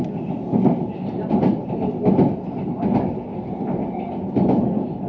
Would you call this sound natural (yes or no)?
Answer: yes